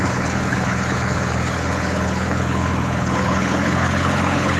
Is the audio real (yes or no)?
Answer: no